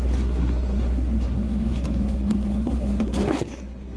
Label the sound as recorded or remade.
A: remade